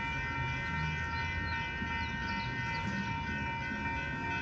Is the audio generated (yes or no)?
no